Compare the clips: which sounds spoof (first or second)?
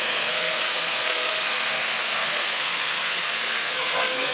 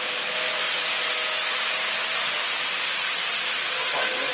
first